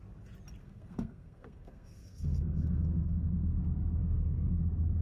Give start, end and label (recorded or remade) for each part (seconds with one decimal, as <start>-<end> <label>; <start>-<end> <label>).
0.0-0.6 recorded; 0.6-3.6 remade; 3.6-4.0 recorded; 4.0-4.5 remade; 4.5-5.0 recorded